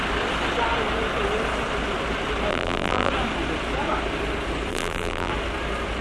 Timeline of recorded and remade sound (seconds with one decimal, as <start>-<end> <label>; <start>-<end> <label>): 0.0-2.5 recorded; 2.5-3.1 remade; 3.1-4.7 recorded; 4.7-5.3 remade; 5.3-6.0 recorded